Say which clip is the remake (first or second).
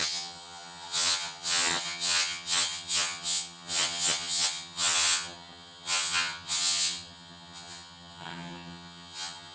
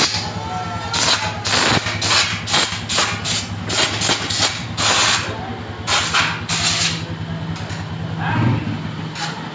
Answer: first